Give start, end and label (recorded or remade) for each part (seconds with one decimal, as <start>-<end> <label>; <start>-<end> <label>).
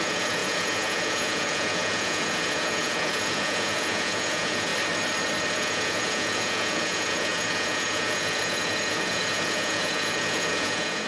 0.0-4.7 remade; 4.7-5.5 recorded; 5.5-11.1 remade